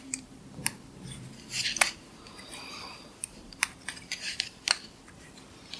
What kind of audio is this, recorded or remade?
remade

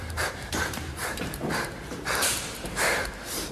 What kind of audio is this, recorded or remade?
remade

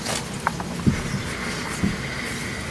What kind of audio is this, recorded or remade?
recorded